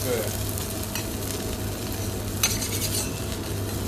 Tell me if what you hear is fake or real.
real